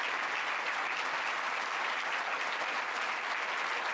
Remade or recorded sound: recorded